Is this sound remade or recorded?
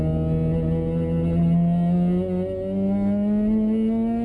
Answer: recorded